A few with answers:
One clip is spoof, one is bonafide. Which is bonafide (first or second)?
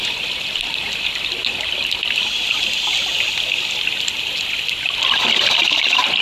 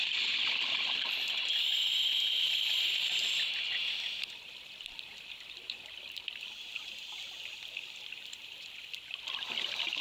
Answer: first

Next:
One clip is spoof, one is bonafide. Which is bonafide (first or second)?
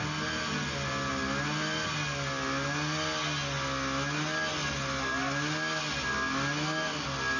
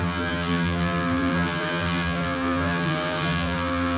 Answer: first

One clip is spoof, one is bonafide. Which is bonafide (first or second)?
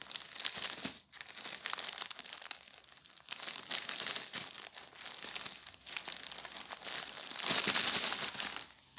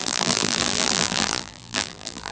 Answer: first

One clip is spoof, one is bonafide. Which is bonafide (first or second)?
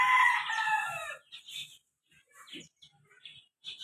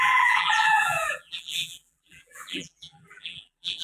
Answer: first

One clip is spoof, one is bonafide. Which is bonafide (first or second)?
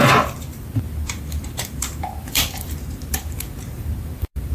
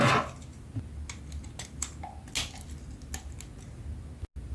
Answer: second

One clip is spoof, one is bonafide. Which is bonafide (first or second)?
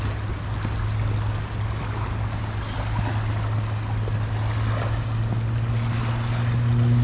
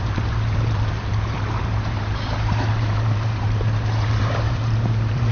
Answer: first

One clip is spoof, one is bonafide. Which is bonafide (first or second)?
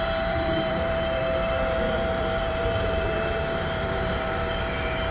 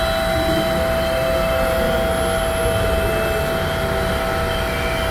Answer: second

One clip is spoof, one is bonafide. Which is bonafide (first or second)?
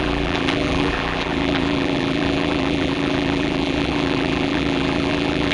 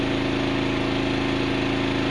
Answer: second